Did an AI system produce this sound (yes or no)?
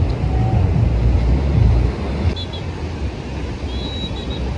no